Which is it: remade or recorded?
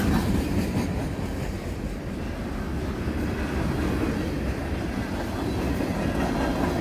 recorded